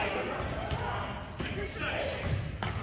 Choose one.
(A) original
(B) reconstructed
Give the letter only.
A